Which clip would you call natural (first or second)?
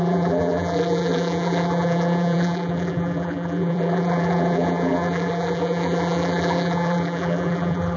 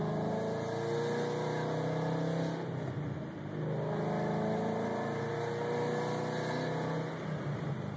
second